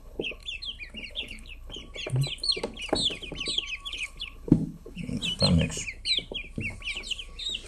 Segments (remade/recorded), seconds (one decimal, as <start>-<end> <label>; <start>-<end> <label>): 0.0-0.4 remade; 0.4-1.1 recorded; 1.1-1.8 remade; 1.8-3.9 recorded; 3.9-5.2 remade; 5.2-7.7 recorded